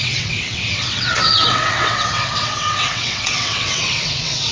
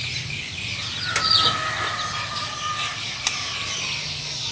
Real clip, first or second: second